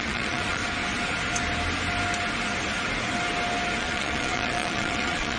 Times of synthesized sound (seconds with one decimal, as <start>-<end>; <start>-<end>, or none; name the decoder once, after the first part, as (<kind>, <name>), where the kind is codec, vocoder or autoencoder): 0.0-0.6 (vocoder, Vocos); 3.8-5.4